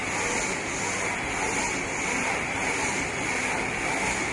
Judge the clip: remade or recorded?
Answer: recorded